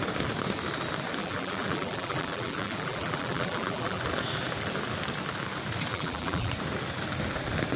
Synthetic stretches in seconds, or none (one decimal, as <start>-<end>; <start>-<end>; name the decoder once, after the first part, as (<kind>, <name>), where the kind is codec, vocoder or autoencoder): 1.2-4.0 (vocoder, BigVGAN v2); 5.9-6.5